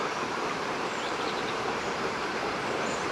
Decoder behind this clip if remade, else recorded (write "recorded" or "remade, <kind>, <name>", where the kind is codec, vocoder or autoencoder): remade, vocoder, BigVGAN v2